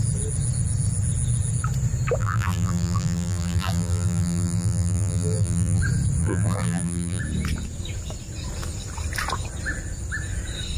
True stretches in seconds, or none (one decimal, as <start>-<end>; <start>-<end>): 0.0-2.2; 5.8-6.2; 7.2-10.8